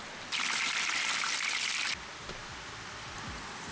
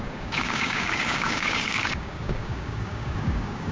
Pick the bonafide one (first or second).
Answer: first